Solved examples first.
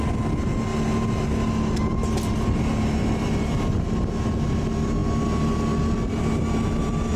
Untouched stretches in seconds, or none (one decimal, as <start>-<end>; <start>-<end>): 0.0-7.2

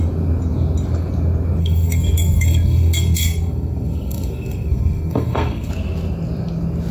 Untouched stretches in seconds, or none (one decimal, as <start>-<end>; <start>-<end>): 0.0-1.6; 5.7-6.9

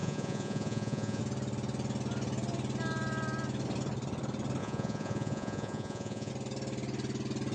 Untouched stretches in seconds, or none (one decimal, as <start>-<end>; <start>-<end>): 1.2-4.6; 6.3-7.5

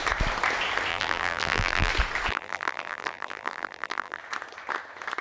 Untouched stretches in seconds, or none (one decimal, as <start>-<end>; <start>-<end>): 0.0-0.9; 1.9-2.3; 4.2-5.2